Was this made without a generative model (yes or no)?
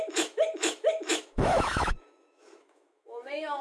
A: no